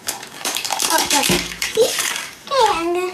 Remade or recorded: remade